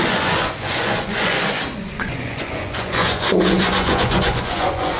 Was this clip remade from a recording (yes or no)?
yes